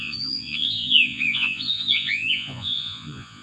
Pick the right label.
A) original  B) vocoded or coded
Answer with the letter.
B